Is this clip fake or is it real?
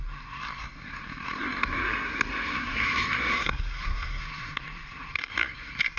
fake